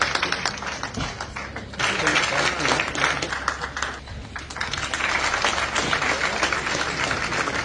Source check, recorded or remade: recorded